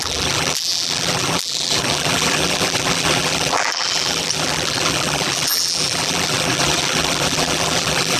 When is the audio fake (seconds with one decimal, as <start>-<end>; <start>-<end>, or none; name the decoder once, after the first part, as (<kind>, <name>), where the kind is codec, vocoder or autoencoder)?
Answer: 0.0-8.2 (vocoder, BigVGAN v2)